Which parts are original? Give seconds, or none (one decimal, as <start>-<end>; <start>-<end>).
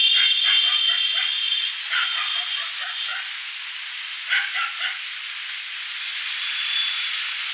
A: 0.0-7.5